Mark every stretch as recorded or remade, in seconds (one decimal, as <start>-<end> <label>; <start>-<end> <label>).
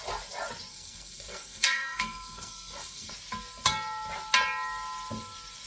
0.0-0.7 recorded; 0.7-3.1 remade; 3.1-5.7 recorded